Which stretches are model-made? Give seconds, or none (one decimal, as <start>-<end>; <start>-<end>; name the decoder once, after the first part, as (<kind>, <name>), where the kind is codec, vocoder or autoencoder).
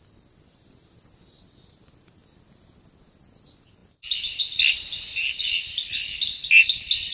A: none